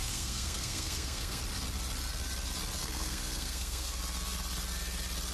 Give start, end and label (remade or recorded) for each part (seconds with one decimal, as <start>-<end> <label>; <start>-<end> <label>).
0.0-1.4 remade; 1.4-2.8 recorded; 2.8-4.0 remade; 4.0-5.3 recorded